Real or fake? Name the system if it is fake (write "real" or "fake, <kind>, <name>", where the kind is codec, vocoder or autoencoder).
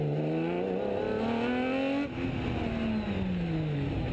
real